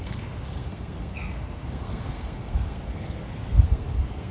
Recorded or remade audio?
remade